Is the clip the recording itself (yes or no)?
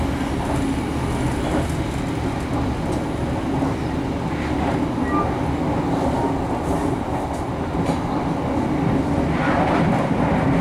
yes